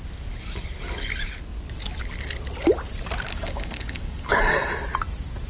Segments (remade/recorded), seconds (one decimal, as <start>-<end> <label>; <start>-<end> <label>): 0.0-3.3 recorded; 3.3-4.4 remade; 4.4-5.5 recorded